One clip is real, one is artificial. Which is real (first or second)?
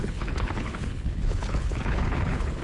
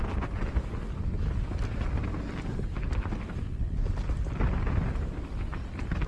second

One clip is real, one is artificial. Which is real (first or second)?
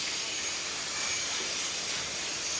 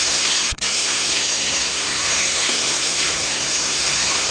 first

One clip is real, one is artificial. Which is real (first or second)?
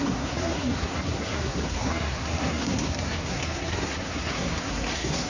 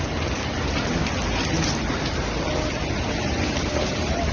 second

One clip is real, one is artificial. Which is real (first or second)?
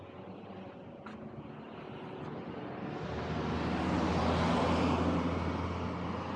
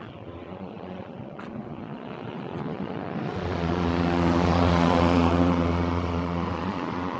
first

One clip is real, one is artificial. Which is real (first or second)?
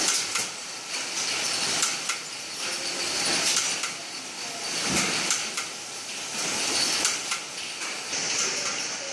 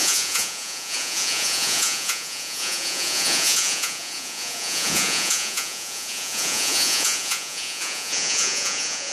first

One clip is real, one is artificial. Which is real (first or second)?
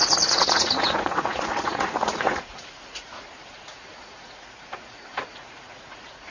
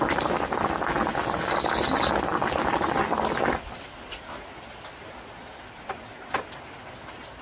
second